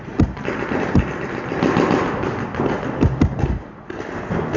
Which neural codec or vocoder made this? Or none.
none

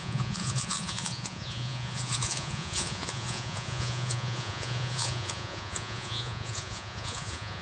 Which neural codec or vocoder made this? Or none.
vocoder, Vocos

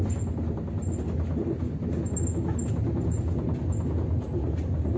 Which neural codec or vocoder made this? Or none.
none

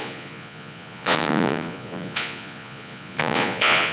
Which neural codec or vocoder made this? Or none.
vocoder, Vocos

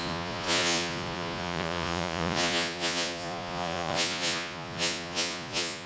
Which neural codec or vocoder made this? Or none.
vocoder, Vocos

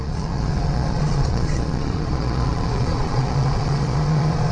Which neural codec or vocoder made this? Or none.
vocoder, Vocos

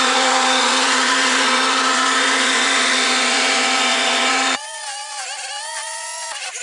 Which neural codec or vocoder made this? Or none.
vocoder, Vocos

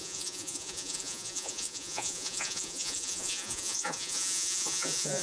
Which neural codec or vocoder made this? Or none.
vocoder, Vocos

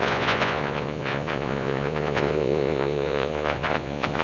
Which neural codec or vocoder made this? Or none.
vocoder, Vocos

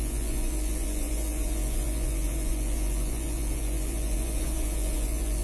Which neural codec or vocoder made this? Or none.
vocoder, Vocos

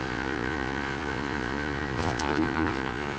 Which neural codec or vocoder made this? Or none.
vocoder, Vocos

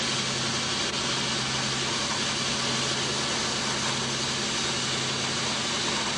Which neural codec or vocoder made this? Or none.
none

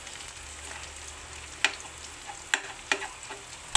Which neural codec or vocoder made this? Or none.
none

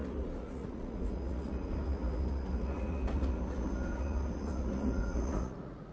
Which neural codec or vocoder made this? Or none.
vocoder, Vocos